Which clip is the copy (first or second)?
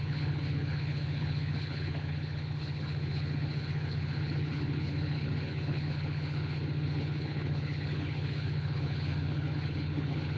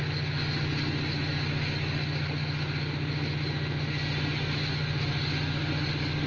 first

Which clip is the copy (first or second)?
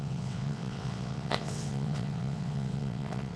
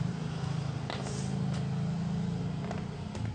first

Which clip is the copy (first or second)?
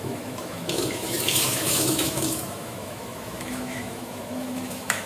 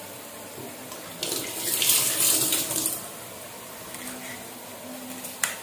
first